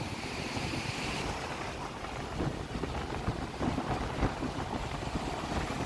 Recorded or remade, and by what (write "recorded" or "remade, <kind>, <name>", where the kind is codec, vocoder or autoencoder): recorded